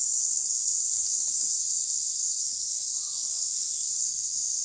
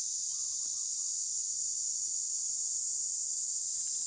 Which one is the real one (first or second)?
second